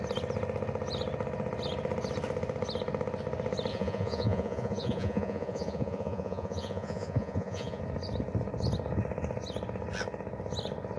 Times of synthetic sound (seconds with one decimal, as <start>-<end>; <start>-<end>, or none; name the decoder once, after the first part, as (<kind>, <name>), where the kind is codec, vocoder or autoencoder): 3.7-7.8 (vocoder, Vocos)